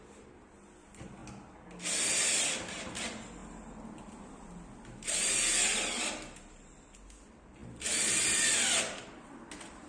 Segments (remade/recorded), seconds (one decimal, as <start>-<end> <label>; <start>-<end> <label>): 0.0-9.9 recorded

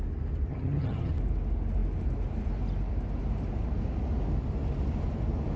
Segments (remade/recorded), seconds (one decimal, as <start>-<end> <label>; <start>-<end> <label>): 0.0-0.5 recorded; 0.5-1.1 remade; 1.1-5.6 recorded

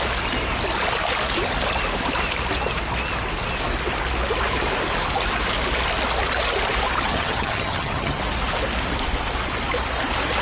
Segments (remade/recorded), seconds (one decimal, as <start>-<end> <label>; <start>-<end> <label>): 0.0-7.1 recorded; 7.1-8.2 remade; 8.2-10.4 recorded